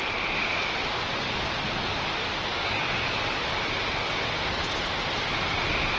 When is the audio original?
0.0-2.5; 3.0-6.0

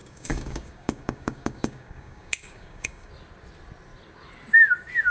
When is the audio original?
3.1-5.1